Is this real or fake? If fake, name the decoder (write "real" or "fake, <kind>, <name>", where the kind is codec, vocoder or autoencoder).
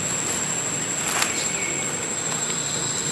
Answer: real